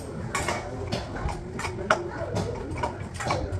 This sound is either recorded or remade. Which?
recorded